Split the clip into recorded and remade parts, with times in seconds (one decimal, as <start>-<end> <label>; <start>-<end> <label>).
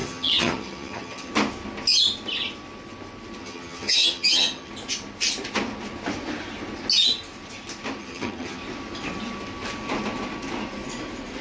0.0-1.3 remade; 1.3-3.4 recorded; 3.4-4.7 remade; 4.7-8.0 recorded; 8.0-8.6 remade; 8.6-11.4 recorded